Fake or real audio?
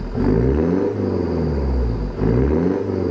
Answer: real